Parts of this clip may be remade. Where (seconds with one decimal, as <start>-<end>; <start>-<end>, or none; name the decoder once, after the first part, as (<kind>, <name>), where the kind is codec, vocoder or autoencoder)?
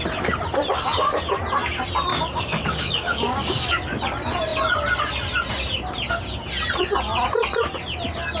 0.7-1.2 (codec, DAC); 2.1-4.0